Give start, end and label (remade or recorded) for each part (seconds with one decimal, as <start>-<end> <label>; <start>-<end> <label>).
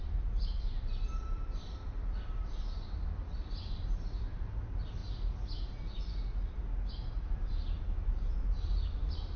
0.0-5.0 remade; 5.0-6.9 recorded; 6.9-9.4 remade